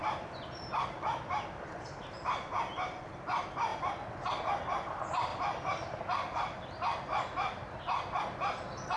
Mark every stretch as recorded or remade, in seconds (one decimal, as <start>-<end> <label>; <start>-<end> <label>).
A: 0.0-2.3 remade; 2.3-5.3 recorded; 5.3-6.0 remade; 6.0-9.0 recorded